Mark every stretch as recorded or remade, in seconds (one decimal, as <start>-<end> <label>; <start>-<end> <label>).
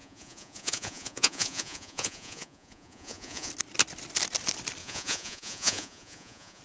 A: 0.0-3.5 remade; 3.5-4.8 recorded; 4.8-6.6 remade